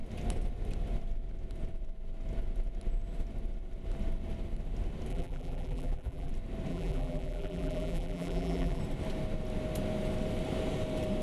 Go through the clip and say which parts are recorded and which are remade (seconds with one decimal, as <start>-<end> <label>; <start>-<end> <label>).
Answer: 0.0-5.1 recorded; 5.1-6.3 remade; 6.3-6.7 recorded; 6.7-8.8 remade; 8.8-11.2 recorded